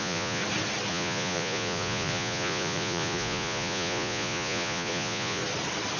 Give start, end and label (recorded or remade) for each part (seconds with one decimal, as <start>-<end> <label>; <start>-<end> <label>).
0.0-0.4 remade; 0.4-0.9 recorded; 0.9-5.4 remade; 5.4-6.0 recorded